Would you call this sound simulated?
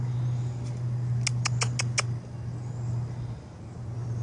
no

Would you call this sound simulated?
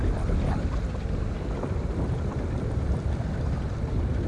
no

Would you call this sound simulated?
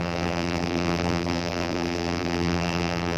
yes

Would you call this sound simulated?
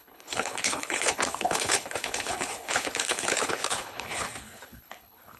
yes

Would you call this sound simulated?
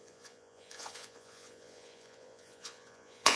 yes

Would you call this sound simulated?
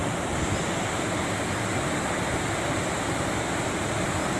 no